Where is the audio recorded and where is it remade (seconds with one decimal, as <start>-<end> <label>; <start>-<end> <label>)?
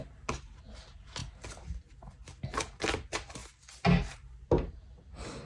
0.0-5.4 recorded